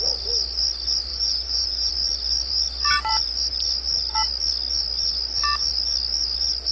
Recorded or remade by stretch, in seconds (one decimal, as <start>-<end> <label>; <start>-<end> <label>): 0.0-1.1 recorded; 1.1-1.9 remade; 1.9-6.7 recorded